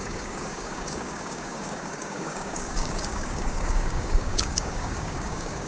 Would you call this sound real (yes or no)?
no